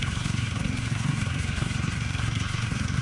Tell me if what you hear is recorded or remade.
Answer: remade